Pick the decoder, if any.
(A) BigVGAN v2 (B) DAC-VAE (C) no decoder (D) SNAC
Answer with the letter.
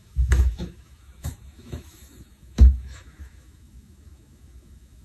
B